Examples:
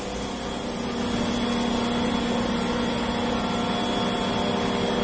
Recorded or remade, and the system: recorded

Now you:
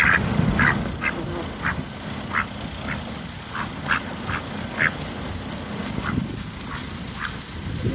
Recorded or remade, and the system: recorded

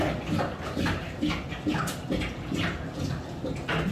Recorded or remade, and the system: recorded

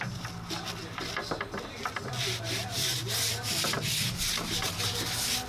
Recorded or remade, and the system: recorded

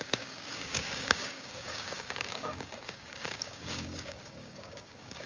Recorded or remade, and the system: remade, codec, DAC